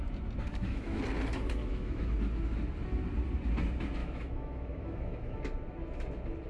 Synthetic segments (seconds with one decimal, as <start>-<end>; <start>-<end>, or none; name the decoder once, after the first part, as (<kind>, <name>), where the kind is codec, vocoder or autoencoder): 0.5-1.0 (autoencoder, DAC-VAE); 1.6-2.1; 4.0-5.4